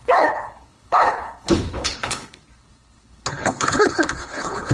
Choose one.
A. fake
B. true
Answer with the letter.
A